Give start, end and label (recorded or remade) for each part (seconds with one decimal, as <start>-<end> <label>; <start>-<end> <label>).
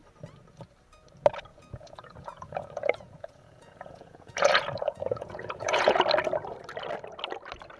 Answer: 0.0-1.5 recorded; 1.5-6.0 remade; 6.0-7.8 recorded